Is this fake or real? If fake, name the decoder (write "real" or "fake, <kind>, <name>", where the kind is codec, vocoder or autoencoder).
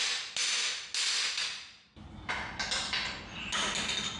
real